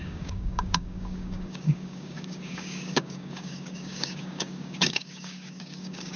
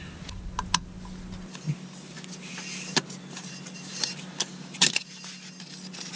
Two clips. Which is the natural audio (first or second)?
second